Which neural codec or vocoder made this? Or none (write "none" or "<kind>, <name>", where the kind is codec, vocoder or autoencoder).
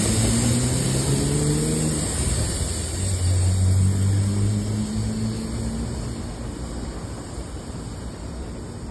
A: none